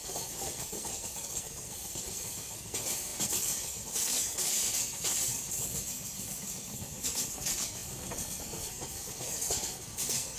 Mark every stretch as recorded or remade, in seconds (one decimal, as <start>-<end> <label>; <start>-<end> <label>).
0.0-10.4 remade